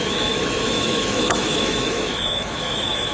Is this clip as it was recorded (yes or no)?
no